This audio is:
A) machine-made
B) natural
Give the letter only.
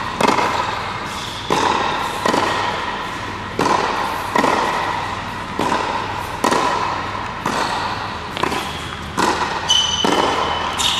B